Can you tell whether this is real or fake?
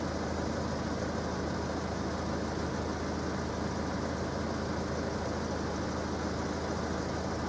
real